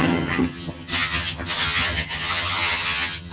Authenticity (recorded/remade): remade